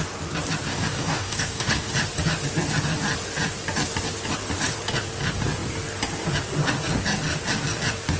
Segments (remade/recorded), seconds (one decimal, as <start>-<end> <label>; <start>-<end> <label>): 0.0-0.7 recorded; 0.7-1.9 remade; 1.9-8.2 recorded